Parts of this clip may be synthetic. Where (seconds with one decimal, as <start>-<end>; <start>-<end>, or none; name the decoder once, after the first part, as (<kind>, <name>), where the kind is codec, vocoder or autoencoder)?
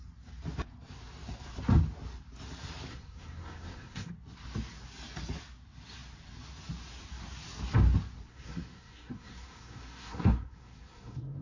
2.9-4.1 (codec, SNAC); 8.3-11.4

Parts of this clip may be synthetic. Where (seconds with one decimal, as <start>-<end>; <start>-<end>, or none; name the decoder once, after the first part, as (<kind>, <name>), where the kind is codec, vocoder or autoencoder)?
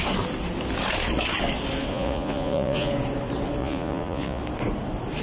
1.9-2.9 (vocoder, Vocos); 3.6-4.4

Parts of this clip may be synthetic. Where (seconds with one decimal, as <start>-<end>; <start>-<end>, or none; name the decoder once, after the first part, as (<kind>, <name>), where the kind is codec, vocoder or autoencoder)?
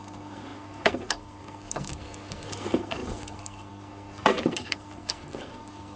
0.0-6.0 (codec, SNAC)